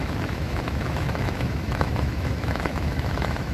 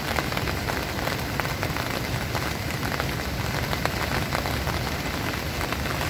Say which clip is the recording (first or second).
second